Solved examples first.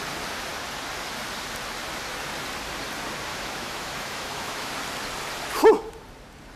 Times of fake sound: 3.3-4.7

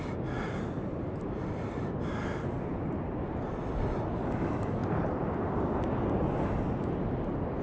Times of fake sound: 4.8-5.6